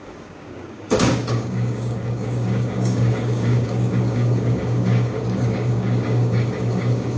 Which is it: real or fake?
fake